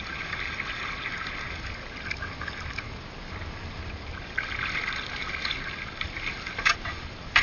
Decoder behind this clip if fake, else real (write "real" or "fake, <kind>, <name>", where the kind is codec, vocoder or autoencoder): real